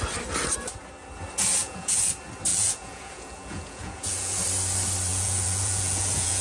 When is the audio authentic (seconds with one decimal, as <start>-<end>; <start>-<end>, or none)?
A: 0.0-1.6; 2.1-2.5; 4.4-5.1

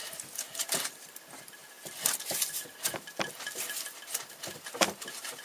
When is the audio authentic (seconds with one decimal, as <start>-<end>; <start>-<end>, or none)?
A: 0.0-0.7

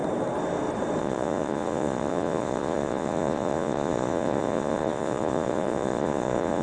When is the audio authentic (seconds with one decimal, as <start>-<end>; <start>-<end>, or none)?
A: 0.0-1.0

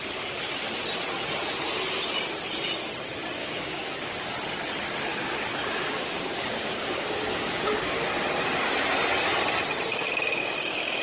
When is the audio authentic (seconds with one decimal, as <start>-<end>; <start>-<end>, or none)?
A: 0.0-3.4; 4.3-5.1; 8.1-9.9